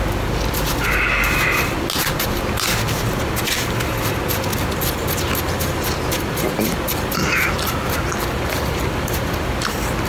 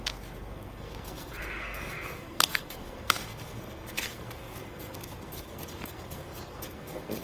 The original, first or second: first